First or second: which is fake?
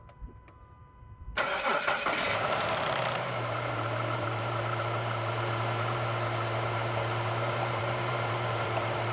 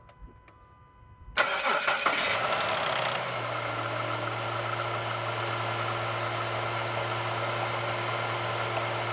first